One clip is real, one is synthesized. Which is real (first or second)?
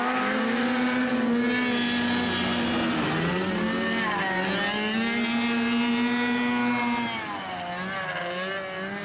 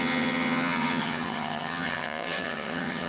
first